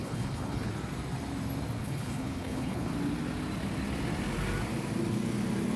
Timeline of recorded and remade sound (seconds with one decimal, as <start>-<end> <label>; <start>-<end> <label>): 0.0-0.7 remade; 0.7-1.8 recorded; 1.8-2.9 remade; 2.9-5.8 recorded